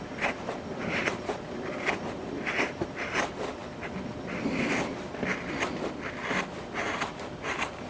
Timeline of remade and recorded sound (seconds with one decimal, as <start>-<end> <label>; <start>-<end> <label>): 0.0-3.6 remade; 3.6-6.7 recorded; 6.7-7.9 remade